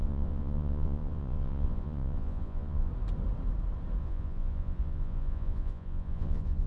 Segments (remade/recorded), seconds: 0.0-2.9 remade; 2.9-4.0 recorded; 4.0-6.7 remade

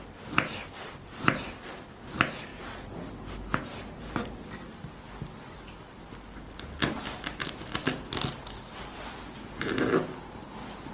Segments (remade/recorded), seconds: 0.0-10.9 recorded

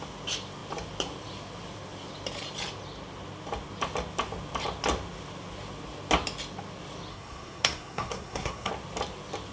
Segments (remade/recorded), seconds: 0.0-7.1 recorded; 7.1-8.7 remade; 8.7-9.5 recorded